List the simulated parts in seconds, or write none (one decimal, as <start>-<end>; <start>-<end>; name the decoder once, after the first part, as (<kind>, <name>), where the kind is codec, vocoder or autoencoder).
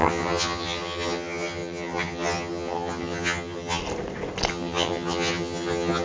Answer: 0.0-3.8 (vocoder, HiFi-GAN); 4.5-6.0